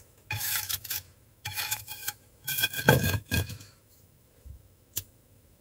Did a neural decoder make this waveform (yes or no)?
yes